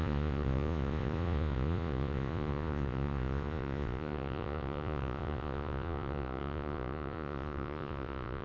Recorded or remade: remade